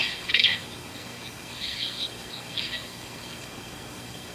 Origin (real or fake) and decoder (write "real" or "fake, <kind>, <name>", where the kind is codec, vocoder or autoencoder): fake, codec, SNAC